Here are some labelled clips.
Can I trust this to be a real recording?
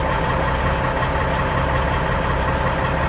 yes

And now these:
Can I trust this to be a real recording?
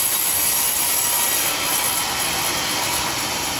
yes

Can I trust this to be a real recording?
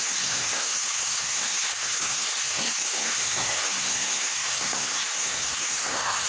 no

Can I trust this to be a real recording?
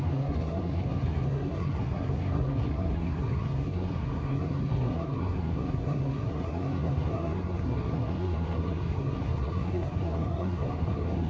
no